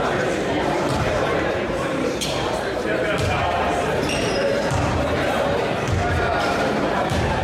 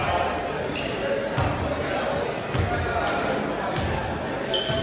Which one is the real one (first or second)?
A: second